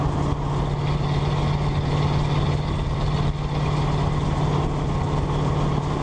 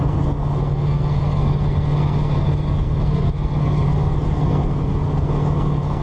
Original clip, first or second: first